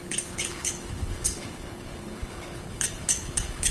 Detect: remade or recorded remade